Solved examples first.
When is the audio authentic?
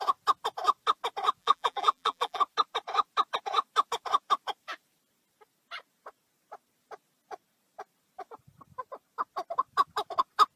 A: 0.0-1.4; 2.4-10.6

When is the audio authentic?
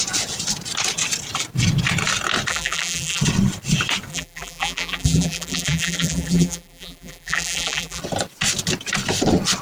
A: 0.0-2.5; 3.2-4.1; 8.0-9.6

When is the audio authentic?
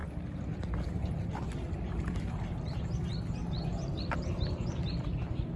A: 0.0-5.6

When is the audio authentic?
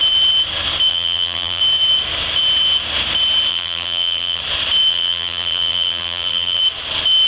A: 0.0-0.9; 1.6-3.5; 4.4-4.9; 6.6-7.3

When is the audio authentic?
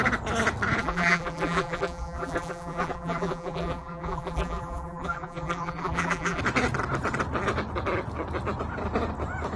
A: 0.0-0.8; 6.4-9.6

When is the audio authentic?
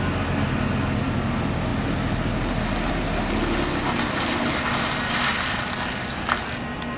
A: 0.0-7.0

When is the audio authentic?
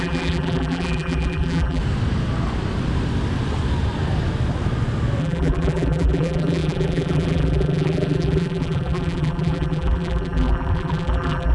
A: 1.8-5.2